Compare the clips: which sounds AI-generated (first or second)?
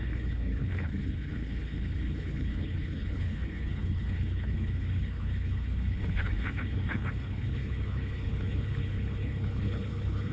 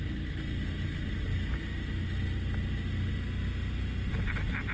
first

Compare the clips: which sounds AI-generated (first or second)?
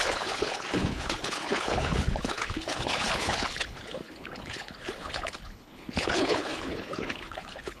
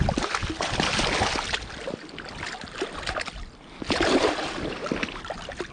first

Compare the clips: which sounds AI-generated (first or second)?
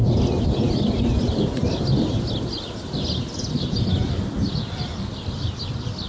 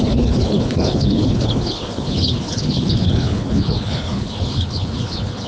second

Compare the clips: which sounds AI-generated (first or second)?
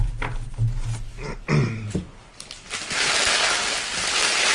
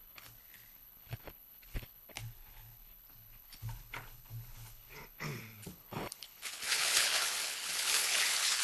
second